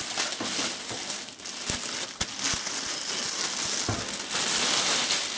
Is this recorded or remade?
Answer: recorded